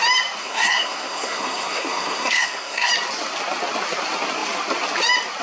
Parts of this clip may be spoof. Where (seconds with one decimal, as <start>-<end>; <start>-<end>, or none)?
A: 0.4-2.9